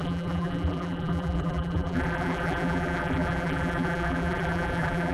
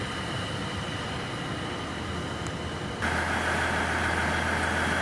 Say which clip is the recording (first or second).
second